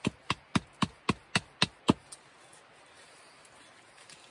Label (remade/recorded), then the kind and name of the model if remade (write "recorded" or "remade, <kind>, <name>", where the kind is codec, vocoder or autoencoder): recorded